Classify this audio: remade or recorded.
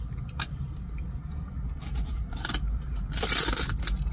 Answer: recorded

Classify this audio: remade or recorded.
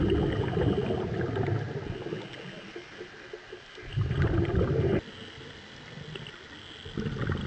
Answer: recorded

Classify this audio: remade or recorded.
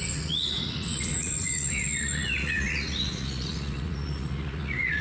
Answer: remade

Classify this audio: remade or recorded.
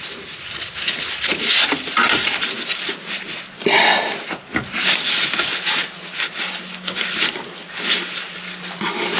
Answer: recorded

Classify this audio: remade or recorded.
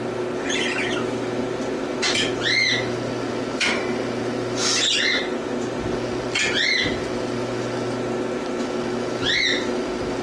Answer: recorded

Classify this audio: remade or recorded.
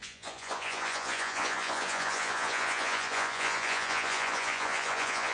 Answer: remade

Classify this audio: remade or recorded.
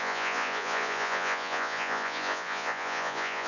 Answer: remade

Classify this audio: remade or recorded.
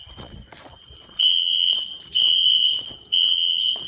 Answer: remade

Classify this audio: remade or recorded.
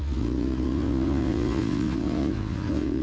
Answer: remade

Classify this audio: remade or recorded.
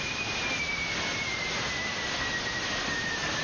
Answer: recorded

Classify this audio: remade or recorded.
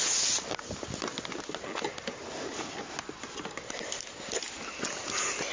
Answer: recorded